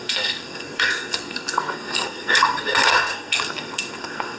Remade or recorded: remade